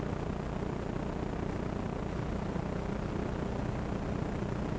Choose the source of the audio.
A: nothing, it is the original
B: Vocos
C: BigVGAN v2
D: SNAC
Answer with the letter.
A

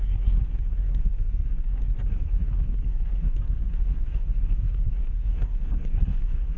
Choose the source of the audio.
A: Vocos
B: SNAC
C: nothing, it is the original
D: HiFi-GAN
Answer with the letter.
B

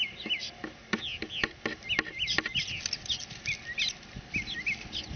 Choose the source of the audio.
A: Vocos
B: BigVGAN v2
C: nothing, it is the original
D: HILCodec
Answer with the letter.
C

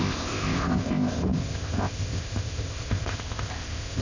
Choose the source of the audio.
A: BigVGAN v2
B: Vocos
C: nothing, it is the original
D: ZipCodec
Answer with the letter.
D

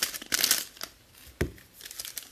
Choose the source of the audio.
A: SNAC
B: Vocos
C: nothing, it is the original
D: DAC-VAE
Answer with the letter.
C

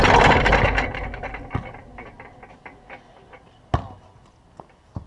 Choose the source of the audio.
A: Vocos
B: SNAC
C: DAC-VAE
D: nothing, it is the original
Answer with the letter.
D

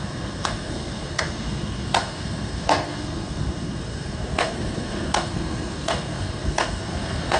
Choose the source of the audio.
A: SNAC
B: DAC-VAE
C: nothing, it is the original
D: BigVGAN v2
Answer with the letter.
A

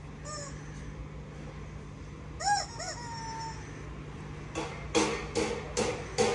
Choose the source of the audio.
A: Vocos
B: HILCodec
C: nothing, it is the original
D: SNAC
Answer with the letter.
C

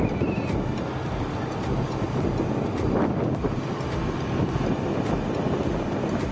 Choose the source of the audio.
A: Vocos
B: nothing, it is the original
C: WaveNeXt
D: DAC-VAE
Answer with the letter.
B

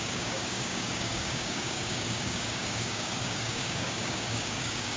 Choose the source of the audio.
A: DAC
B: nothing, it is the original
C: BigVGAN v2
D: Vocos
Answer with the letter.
A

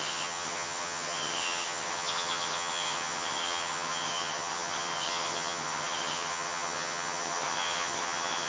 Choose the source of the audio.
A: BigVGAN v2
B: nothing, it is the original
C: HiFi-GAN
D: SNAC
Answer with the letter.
C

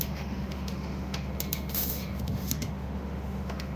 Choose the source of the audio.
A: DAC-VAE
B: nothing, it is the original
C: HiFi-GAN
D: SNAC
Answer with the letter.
A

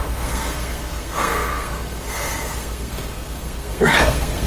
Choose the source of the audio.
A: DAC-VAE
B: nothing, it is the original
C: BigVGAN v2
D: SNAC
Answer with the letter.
D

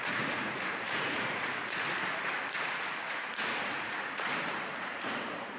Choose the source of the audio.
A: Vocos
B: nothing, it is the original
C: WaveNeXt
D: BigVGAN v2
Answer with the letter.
A